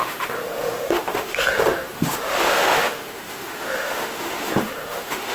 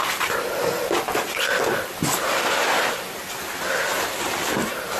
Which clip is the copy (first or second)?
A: first